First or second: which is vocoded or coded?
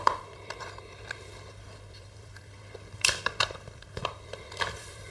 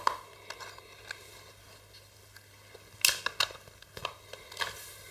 first